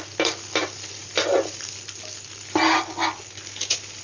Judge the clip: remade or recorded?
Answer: recorded